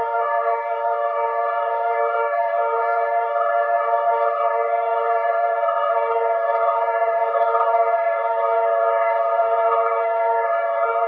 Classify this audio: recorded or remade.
remade